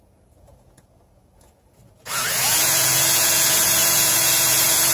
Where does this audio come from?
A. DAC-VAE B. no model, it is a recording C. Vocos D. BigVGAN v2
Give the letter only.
C